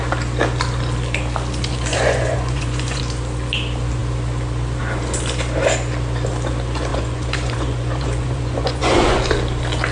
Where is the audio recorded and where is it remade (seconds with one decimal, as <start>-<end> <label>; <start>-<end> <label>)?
0.0-1.9 recorded; 1.9-3.0 remade; 3.0-6.9 recorded; 6.9-9.2 remade; 9.2-9.9 recorded